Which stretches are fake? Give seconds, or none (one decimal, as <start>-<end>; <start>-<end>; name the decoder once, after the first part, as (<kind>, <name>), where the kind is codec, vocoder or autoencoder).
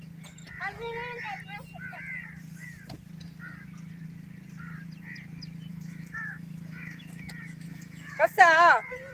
5.7-8.4 (autoencoder, DAC-VAE)